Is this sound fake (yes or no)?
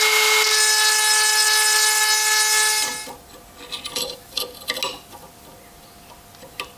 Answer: no